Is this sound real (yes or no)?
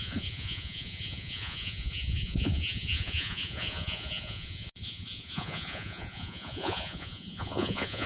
no